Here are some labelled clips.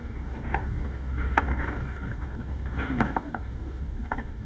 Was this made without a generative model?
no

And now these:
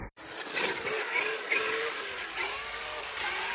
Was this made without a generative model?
yes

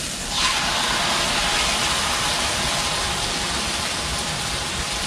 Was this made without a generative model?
yes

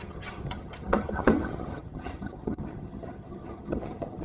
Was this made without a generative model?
no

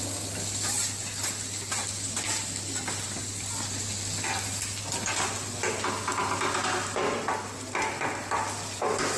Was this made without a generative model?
yes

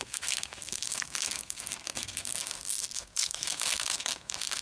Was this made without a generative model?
no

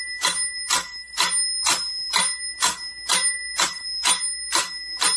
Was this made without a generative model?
yes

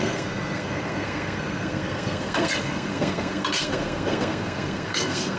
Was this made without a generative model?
no